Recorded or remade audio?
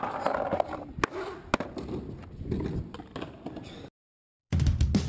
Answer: recorded